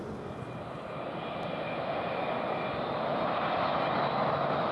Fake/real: real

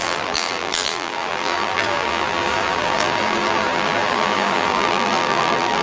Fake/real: fake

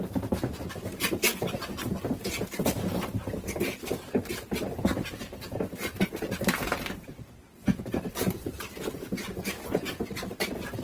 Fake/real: fake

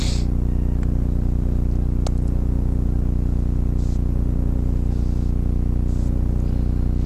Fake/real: real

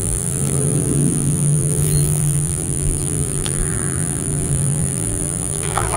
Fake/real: fake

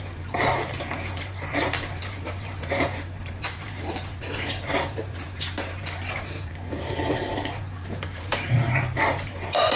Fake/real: fake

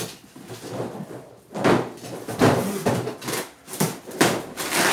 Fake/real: real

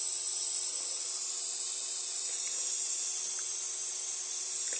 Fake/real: real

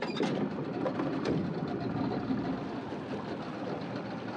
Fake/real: real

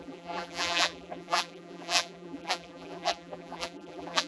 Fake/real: fake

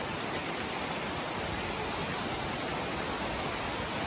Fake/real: real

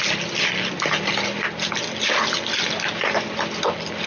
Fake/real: real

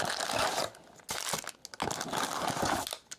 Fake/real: real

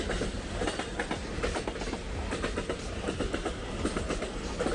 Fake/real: real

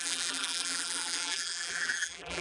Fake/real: fake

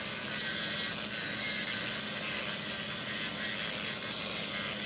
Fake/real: real